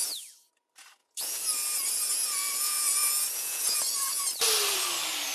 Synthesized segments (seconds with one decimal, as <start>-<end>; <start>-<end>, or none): 0.0-0.5; 1.0-4.2